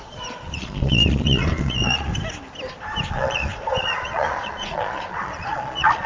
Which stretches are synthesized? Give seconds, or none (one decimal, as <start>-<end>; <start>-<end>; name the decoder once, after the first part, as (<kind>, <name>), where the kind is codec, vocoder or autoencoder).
0.0-2.1 (vocoder, Vocos); 3.1-6.1